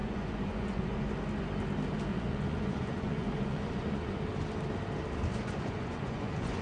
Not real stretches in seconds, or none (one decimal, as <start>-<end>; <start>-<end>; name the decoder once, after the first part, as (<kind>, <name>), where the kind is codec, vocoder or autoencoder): 0.0-1.1 (vocoder, Vocos); 2.1-4.2; 5.3-6.6